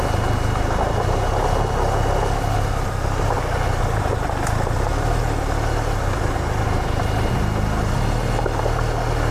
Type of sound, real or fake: real